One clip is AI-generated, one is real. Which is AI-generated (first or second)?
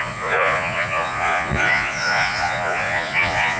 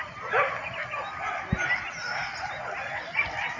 first